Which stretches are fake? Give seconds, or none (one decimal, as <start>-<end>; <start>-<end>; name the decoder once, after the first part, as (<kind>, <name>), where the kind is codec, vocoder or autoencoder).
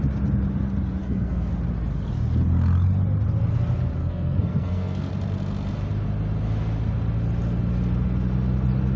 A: 1.0-1.5 (codec, SNAC); 4.0-5.1